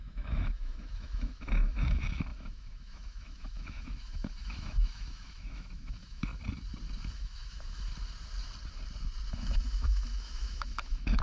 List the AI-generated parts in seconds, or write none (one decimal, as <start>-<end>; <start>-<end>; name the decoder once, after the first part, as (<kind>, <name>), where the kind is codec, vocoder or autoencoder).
0.0-6.3 (autoencoder, DAC-VAE); 7.1-7.9; 9.3-11.2